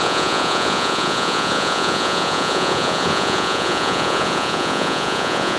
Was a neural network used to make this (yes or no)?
yes